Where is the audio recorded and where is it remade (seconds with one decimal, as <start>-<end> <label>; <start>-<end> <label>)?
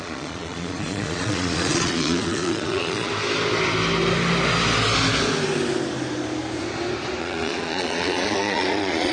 0.0-3.1 remade; 3.1-7.2 recorded; 7.2-9.1 remade